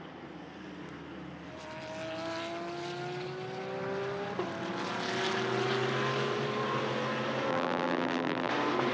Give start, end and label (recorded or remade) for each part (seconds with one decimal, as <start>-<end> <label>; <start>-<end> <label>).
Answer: 0.0-7.5 recorded; 7.5-8.5 remade; 8.5-8.9 recorded